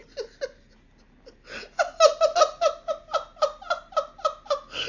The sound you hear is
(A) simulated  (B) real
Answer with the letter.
B